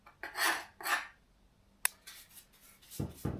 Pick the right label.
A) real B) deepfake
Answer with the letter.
A